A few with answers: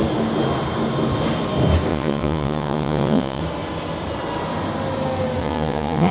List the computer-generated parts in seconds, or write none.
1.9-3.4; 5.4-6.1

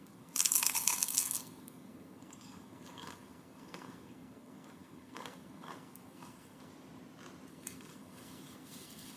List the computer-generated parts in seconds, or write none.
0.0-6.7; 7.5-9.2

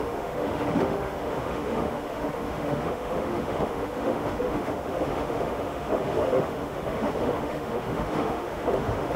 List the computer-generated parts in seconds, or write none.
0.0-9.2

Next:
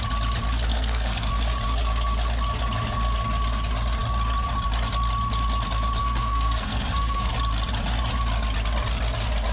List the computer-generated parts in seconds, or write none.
0.7-1.3; 6.0-7.3

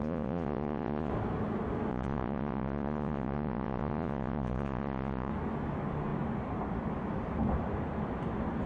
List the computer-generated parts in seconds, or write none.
0.0-1.1; 1.9-5.3

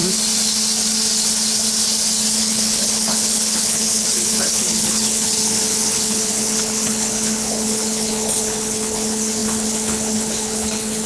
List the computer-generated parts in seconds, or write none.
2.4-11.1

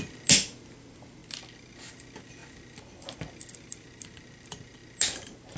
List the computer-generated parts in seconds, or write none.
none

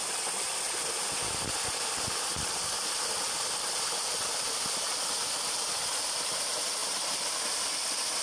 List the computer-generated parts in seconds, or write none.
6.8-7.5